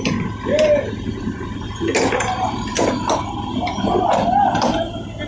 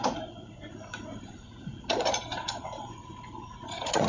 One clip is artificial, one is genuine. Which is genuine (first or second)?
first